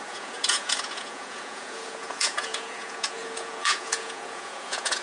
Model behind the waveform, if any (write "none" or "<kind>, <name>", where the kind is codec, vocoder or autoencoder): vocoder, Vocos